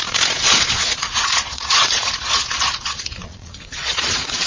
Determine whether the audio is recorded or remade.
remade